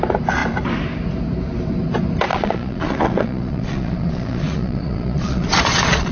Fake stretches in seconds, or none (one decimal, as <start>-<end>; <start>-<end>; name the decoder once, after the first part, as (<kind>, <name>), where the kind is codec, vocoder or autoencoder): 2.3-6.1 (vocoder, Vocos)